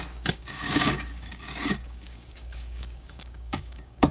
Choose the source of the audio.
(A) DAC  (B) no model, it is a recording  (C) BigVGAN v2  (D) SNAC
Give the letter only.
A